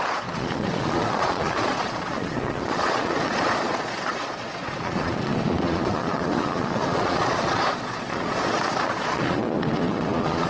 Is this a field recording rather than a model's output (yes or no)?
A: no